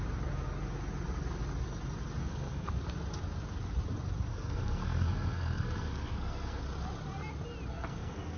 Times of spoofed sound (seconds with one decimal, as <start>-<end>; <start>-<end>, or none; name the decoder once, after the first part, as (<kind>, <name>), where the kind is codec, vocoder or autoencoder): 2.2-2.7 (codec, SNAC); 4.3-6.6; 7.7-8.4

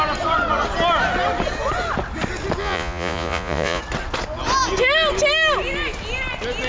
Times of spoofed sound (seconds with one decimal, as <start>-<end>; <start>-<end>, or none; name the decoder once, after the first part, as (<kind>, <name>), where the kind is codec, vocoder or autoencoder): 2.6-3.8 (vocoder, Vocos)

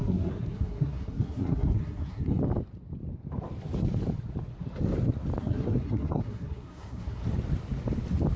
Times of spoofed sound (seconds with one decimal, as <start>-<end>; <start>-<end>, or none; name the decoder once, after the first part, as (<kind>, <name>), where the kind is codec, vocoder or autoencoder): 0.0-2.4 (codec, SNAC); 5.4-7.2

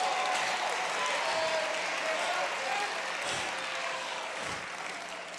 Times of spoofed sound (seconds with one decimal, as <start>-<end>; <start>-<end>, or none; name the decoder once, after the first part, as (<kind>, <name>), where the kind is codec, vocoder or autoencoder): 3.8-4.6 (codec, DAC)

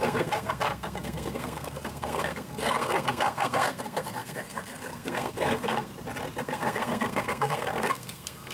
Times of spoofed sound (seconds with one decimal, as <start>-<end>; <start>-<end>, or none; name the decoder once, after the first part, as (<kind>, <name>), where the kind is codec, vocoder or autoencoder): 0.0-5.9 (codec, SNAC); 6.4-8.5

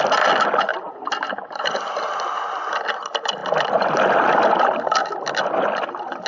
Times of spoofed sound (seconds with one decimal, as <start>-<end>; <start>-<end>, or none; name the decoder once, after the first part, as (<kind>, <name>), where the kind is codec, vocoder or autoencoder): 1.3-1.9 (codec, DAC)